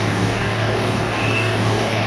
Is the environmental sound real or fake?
fake